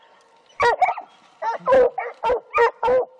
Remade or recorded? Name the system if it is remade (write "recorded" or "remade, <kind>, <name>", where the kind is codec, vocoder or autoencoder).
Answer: recorded